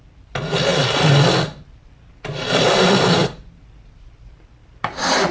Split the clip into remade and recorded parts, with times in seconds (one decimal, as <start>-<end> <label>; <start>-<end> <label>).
0.0-3.2 recorded; 3.2-4.0 remade; 4.0-4.6 recorded; 4.6-5.3 remade